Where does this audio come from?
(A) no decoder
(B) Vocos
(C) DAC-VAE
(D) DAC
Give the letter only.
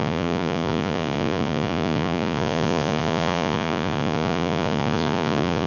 B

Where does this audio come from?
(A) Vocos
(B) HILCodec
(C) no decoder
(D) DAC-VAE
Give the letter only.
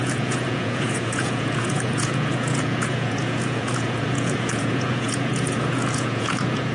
A